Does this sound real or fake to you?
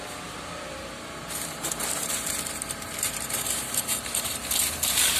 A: fake